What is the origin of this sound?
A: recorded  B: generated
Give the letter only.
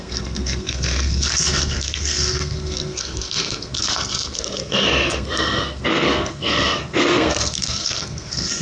B